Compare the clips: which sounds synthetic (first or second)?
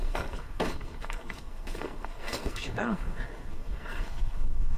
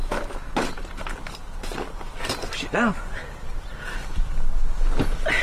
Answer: first